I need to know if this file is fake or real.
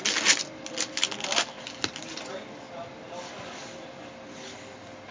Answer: real